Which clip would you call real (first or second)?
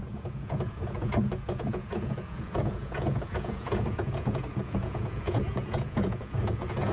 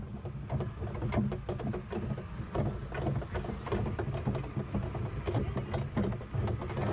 second